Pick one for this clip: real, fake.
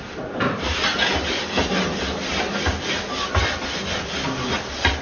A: real